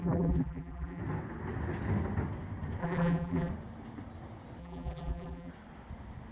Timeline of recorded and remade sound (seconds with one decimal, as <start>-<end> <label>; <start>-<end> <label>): 0.0-1.0 remade; 1.0-2.8 recorded; 2.8-3.5 remade; 3.5-4.6 recorded; 4.6-5.5 remade; 5.5-6.3 recorded